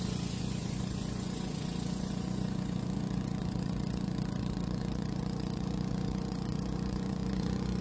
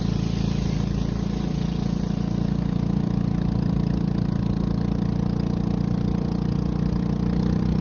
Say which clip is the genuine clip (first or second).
second